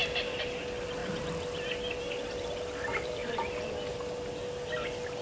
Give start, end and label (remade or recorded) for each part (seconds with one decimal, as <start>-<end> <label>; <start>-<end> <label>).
0.0-1.0 recorded; 1.0-2.0 remade; 2.0-2.9 recorded; 2.9-4.0 remade; 4.0-5.2 recorded